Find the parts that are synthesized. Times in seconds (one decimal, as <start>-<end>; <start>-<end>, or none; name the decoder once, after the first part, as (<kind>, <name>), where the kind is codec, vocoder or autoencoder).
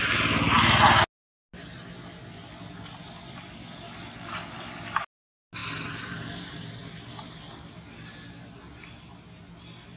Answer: none